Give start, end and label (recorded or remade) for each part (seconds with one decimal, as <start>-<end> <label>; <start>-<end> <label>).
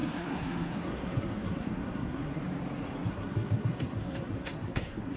0.0-2.4 remade; 2.4-3.1 recorded; 3.1-5.2 remade